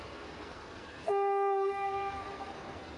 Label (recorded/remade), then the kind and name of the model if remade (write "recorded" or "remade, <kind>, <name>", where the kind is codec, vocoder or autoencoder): remade, codec, SNAC